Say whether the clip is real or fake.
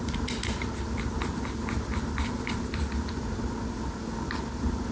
real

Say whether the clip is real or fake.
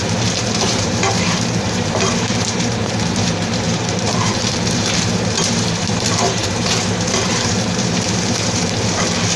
fake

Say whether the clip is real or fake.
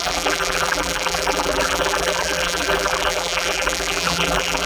fake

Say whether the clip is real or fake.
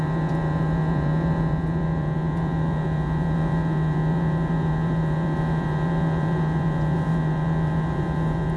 fake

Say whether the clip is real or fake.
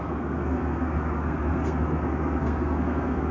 fake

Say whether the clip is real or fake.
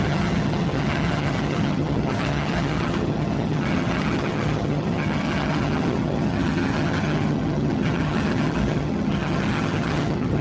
fake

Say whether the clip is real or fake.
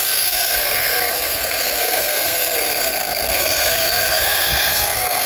fake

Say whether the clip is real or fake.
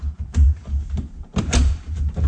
fake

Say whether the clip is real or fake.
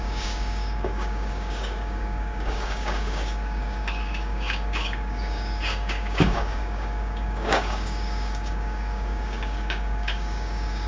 fake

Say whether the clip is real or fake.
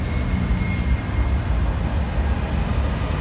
real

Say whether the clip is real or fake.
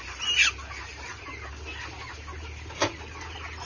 real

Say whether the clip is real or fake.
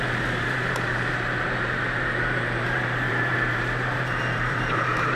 fake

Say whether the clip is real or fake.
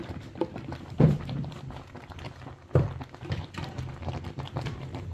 fake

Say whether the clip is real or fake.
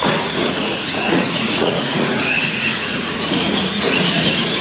fake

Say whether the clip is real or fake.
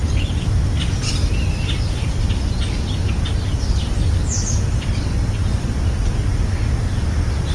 real